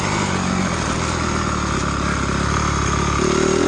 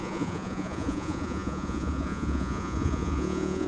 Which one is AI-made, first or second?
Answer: second